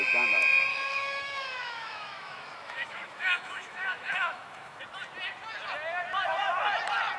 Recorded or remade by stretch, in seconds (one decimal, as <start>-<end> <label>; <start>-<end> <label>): 0.0-0.7 recorded; 0.7-4.8 remade; 4.8-7.2 recorded